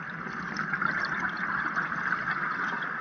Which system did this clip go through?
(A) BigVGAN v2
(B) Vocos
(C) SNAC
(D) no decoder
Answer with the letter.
D